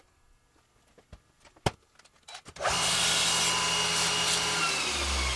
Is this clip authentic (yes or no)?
yes